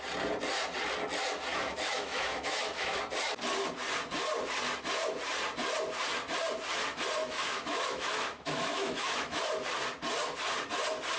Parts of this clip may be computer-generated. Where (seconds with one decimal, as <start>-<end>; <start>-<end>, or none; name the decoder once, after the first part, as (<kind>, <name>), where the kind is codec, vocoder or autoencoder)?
1.5-3.0 (autoencoder, DAC-VAE); 7.2-9.4